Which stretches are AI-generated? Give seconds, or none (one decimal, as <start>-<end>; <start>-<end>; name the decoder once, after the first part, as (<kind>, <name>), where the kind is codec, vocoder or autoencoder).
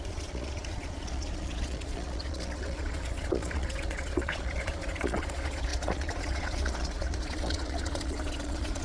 0.0-8.8 (vocoder, Vocos)